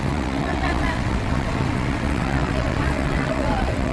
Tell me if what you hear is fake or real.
fake